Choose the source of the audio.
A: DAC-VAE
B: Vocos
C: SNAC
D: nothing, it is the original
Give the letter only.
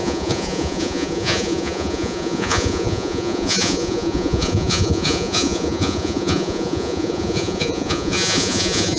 B